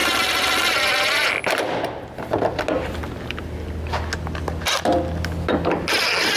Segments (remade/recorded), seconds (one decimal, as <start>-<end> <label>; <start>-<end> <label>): 0.0-6.4 recorded